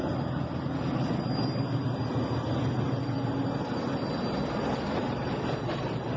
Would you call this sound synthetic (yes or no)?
no